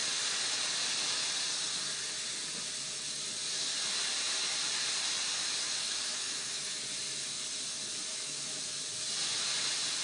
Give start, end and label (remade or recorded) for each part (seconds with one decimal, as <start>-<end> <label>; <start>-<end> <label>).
0.0-5.8 recorded; 5.8-6.8 remade; 6.8-8.1 recorded; 8.1-8.7 remade; 8.7-10.0 recorded